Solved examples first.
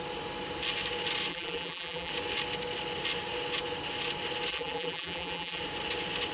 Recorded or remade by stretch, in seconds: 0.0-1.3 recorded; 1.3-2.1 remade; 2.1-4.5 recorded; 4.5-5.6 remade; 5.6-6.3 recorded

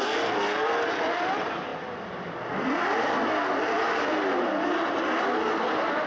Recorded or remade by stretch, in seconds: 0.0-6.1 recorded

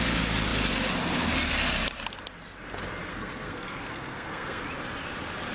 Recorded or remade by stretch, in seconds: 0.0-3.1 recorded; 3.1-4.6 remade; 4.6-5.5 recorded

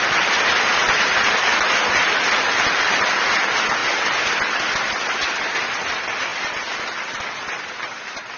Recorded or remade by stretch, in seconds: 0.0-8.4 recorded

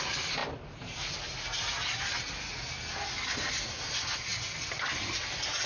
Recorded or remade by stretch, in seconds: 0.0-5.7 recorded

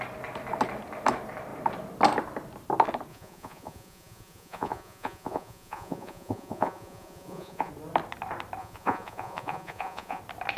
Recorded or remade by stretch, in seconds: 0.0-3.1 recorded; 3.1-7.7 remade; 7.7-8.6 recorded; 8.6-10.2 remade; 10.2-10.6 recorded

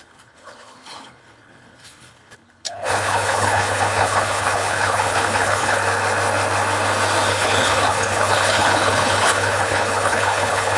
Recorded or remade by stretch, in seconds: 0.0-5.8 remade; 5.8-7.3 recorded; 7.3-10.8 remade